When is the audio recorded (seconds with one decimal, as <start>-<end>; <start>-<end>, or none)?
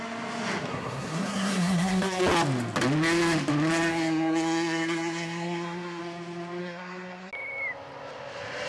0.0-0.7; 2.2-3.9; 6.0-6.6; 7.3-8.7